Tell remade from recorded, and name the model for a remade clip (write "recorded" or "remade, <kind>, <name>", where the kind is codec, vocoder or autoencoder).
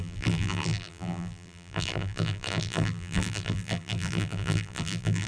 remade, vocoder, BigVGAN v2